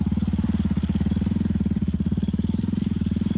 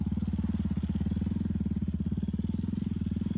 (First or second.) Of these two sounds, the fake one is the first